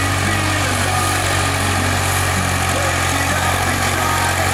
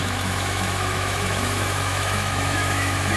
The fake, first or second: second